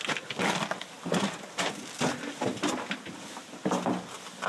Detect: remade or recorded recorded